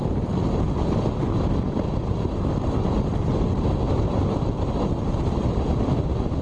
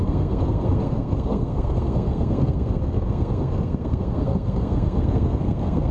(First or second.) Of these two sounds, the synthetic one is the second